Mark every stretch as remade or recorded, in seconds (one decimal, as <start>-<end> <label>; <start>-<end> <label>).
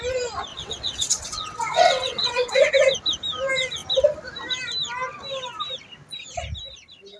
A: 0.0-0.5 recorded; 0.5-2.7 remade; 2.7-7.2 recorded